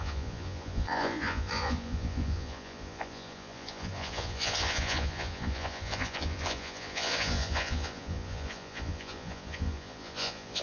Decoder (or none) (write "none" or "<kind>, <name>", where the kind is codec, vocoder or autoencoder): vocoder, Vocos